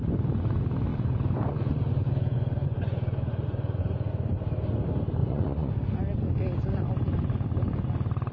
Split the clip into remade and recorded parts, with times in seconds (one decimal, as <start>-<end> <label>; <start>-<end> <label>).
0.0-0.9 recorded; 0.9-4.1 remade; 4.1-5.2 recorded; 5.2-5.7 remade; 5.7-8.3 recorded